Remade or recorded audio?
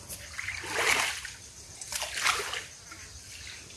recorded